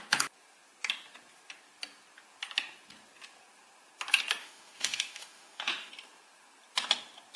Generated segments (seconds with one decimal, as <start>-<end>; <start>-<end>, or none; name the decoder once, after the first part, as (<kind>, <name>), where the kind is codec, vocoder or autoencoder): 4.4-5.9 (autoencoder, DAC-VAE)